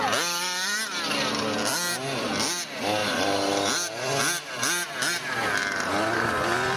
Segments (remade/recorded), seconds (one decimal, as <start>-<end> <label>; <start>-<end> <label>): 0.0-3.0 recorded; 3.0-3.5 remade; 3.5-6.8 recorded